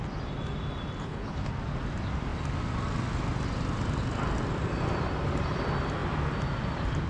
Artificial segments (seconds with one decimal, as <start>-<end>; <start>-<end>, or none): 1.0-1.5